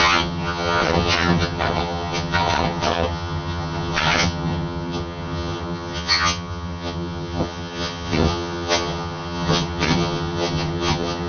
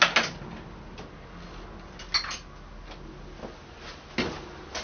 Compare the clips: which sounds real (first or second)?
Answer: second